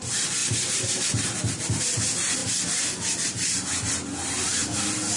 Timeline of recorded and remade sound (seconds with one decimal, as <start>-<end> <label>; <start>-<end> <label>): 0.0-0.4 remade; 0.4-1.8 recorded; 1.8-2.4 remade; 2.4-3.9 recorded; 3.9-5.2 remade